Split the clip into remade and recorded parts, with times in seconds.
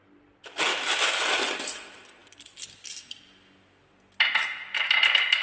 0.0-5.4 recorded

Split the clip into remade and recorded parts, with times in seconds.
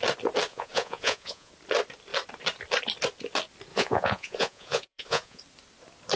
0.0-0.5 recorded; 0.5-1.5 remade; 1.5-3.7 recorded; 3.7-5.4 remade; 5.4-6.2 recorded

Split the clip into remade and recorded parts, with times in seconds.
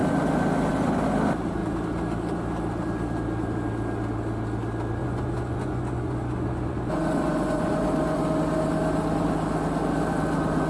0.0-5.0 recorded; 5.0-8.2 remade; 8.2-10.7 recorded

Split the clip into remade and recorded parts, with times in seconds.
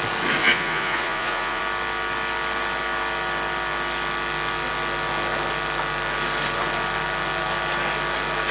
0.0-0.4 recorded; 0.4-1.6 remade; 1.6-8.5 recorded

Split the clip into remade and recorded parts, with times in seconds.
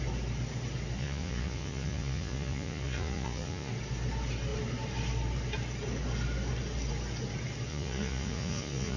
0.0-1.0 recorded; 1.0-3.7 remade; 3.7-7.7 recorded; 7.7-9.0 remade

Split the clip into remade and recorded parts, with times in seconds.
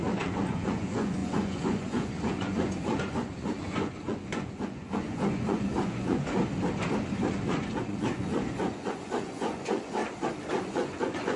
0.0-6.4 remade; 6.4-7.3 recorded; 7.3-10.0 remade; 10.0-10.6 recorded; 10.6-11.4 remade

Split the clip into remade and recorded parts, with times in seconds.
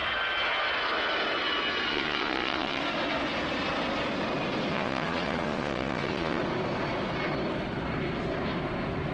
0.0-1.9 recorded; 1.9-2.8 remade; 2.8-4.7 recorded; 4.7-6.4 remade; 6.4-9.1 recorded